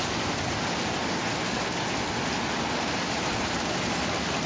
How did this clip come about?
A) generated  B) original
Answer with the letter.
B